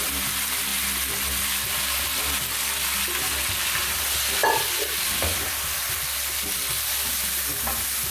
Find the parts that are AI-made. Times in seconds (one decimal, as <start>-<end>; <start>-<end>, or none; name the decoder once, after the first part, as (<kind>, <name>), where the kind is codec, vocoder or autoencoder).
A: 4.4-5.7 (vocoder, BigVGAN v2)